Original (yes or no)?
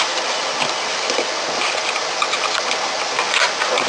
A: yes